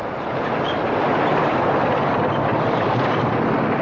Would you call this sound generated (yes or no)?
yes